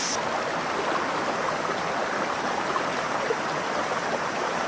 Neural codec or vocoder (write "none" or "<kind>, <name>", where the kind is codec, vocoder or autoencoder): none